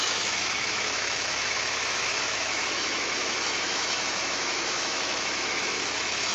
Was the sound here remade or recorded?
remade